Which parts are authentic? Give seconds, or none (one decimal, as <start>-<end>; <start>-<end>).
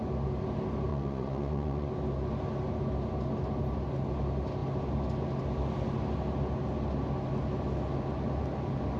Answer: 0.0-0.9; 1.9-9.0